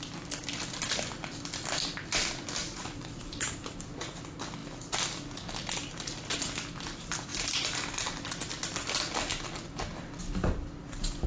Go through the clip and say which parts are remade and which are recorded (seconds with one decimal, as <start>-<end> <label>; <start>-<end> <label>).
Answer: 0.0-2.6 recorded; 2.6-3.7 remade; 3.7-7.3 recorded; 7.3-8.3 remade; 8.3-11.3 recorded

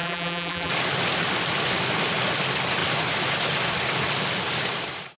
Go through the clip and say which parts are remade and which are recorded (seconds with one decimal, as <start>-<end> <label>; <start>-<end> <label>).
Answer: 0.0-0.7 remade; 0.7-5.2 recorded

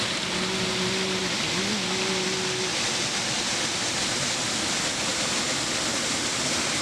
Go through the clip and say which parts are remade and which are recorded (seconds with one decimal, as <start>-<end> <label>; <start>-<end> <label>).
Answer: 0.0-6.8 recorded

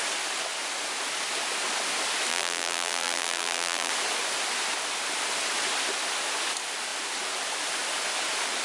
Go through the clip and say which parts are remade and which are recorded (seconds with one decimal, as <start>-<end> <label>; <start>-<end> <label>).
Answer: 0.0-2.3 recorded; 2.3-3.9 remade; 3.9-8.6 recorded